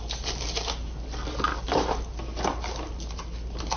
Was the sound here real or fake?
real